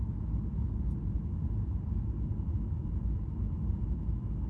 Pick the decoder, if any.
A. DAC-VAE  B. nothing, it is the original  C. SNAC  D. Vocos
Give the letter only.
B